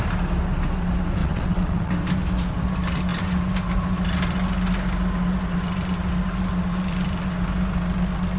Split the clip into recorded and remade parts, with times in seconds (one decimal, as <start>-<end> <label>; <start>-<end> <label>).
0.0-1.2 recorded; 1.2-1.9 remade; 1.9-8.4 recorded